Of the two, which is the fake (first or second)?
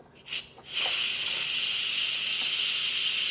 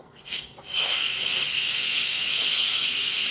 second